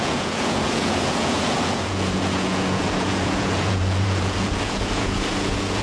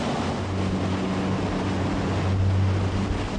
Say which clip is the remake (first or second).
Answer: first